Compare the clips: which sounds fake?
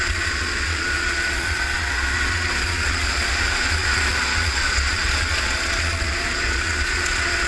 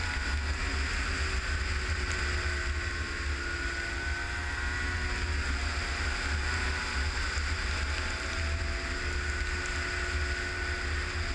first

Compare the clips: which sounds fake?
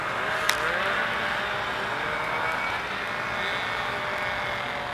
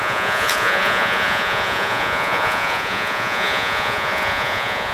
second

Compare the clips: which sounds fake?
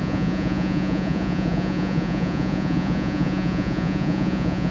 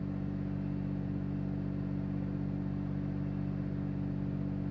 first